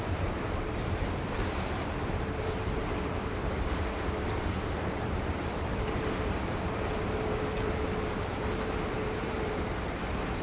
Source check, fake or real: fake